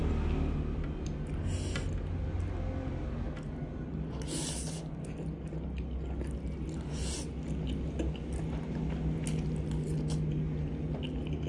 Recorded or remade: recorded